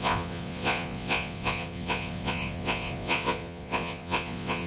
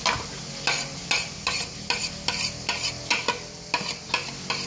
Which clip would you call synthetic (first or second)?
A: first